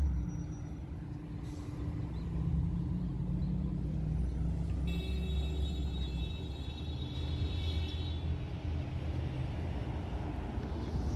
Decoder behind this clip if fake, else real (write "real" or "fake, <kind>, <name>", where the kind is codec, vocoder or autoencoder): real